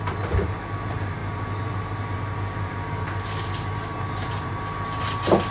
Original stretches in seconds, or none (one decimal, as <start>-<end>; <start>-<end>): 0.0-5.5